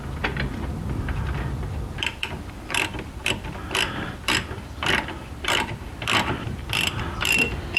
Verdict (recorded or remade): remade